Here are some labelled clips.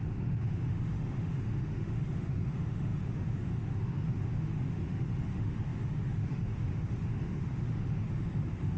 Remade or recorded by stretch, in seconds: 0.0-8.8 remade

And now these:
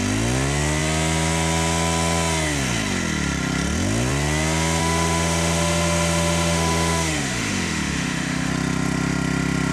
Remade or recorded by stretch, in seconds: 0.0-4.8 recorded; 4.8-8.5 remade; 8.5-9.7 recorded

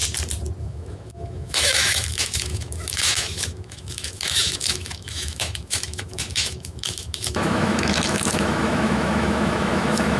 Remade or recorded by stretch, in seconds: 0.0-0.6 recorded; 0.6-10.2 remade

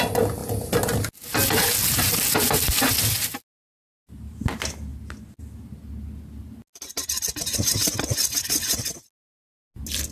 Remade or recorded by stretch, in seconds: 0.0-10.1 recorded

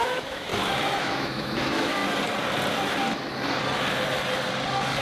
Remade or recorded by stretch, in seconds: 0.0-0.5 remade; 0.5-1.0 recorded; 1.0-2.0 remade; 2.0-5.0 recorded

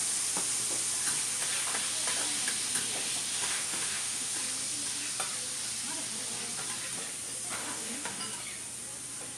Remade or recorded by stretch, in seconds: 0.0-3.3 recorded; 3.3-4.3 remade; 4.3-7.6 recorded; 7.6-8.2 remade; 8.2-9.4 recorded